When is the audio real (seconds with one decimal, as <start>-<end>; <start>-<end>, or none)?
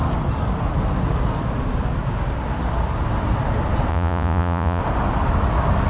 0.0-3.9; 4.8-5.9